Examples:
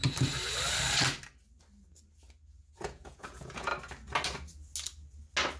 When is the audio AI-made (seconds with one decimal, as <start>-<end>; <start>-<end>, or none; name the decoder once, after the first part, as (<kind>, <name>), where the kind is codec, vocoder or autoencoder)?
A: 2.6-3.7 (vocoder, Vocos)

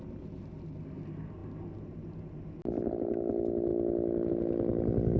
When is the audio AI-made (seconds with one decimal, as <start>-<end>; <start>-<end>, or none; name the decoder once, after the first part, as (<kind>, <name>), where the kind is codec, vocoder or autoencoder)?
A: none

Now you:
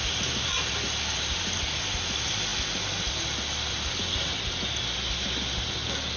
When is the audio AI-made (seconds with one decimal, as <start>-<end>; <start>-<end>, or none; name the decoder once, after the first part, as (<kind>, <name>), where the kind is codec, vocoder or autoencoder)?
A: none

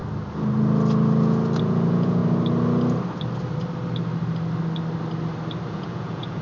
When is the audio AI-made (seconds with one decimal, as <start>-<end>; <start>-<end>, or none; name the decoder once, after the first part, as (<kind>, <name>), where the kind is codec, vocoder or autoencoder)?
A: 1.6-2.2 (vocoder, Vocos); 5.7-6.4

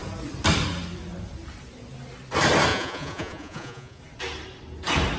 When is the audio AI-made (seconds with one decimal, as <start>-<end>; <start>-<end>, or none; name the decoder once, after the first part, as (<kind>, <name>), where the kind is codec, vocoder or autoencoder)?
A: 2.7-4.0 (vocoder, Vocos)